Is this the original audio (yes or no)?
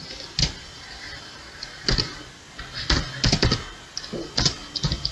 yes